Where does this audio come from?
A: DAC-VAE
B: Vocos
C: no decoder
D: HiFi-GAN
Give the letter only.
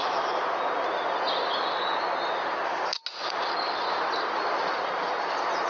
C